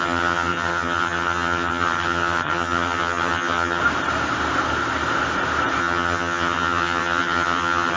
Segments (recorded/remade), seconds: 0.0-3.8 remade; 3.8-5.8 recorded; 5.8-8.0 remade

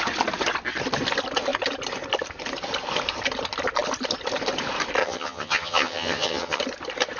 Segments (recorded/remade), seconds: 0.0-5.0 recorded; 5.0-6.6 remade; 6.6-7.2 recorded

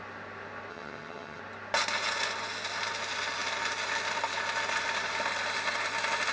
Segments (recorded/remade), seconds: 0.0-0.7 recorded; 0.7-1.4 remade; 1.4-6.3 recorded

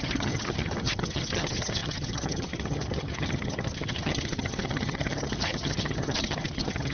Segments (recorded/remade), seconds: 0.0-6.9 remade

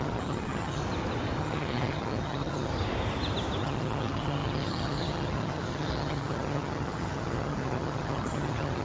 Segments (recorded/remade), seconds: 0.0-0.8 remade; 0.8-1.4 recorded; 1.4-2.7 remade; 2.7-3.6 recorded; 3.6-8.8 remade

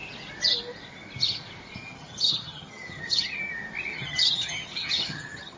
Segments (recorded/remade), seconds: 0.0-1.8 recorded; 1.8-3.5 remade; 3.5-3.9 recorded; 3.9-5.6 remade